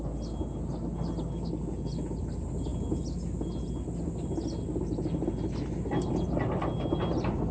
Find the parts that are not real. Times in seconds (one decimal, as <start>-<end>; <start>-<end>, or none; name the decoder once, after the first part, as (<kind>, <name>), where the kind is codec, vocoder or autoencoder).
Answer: none